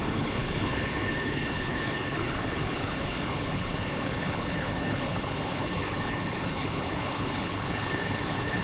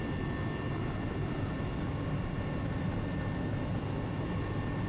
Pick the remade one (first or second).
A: first